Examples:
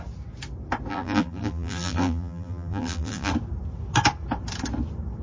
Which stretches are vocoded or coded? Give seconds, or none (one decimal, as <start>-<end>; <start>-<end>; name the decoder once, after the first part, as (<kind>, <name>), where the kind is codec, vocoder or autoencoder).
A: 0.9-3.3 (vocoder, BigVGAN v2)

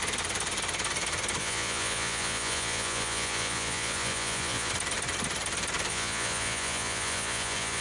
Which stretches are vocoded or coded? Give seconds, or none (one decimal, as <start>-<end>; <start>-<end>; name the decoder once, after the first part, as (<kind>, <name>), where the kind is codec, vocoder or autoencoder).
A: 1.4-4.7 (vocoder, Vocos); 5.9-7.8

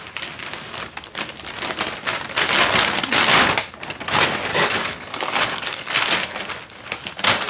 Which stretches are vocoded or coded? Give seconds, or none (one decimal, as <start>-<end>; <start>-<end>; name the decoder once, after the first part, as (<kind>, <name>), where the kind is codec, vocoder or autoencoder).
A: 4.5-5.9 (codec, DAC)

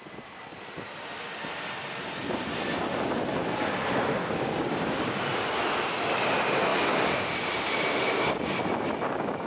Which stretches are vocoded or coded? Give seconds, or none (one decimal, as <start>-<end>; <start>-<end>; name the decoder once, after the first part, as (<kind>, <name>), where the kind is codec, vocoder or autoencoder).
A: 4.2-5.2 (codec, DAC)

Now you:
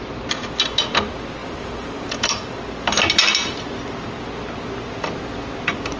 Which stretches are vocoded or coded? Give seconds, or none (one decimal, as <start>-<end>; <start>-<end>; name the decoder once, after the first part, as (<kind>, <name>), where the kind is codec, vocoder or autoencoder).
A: 1.4-2.6 (vocoder, BigVGAN v2)